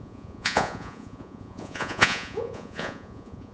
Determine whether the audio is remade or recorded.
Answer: remade